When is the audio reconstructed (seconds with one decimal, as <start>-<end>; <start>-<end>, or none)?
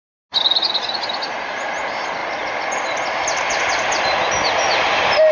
none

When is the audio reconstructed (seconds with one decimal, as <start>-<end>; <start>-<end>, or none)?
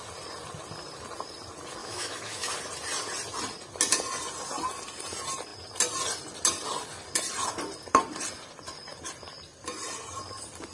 1.8-2.5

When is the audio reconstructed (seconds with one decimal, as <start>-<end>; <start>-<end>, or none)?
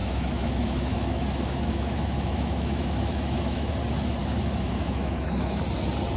0.0-3.7; 4.2-5.6